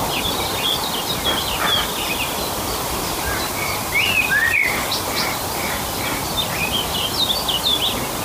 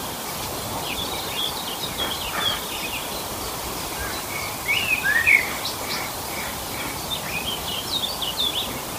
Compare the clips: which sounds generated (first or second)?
second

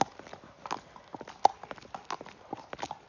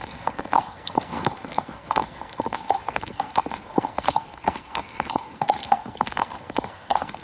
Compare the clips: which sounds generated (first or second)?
second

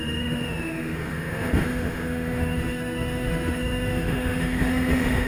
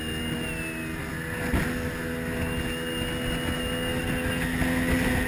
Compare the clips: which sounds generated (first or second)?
first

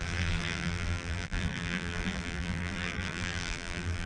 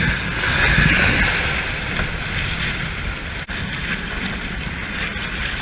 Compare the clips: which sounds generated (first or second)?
first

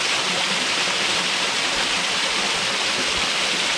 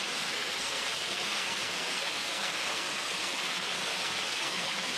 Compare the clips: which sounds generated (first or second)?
second